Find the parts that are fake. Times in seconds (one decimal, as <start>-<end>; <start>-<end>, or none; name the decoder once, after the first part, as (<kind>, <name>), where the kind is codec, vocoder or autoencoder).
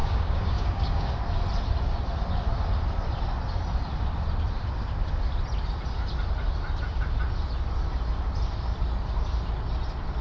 0.0-1.1 (codec, DAC)